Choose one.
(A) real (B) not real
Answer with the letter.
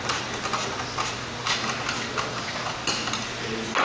A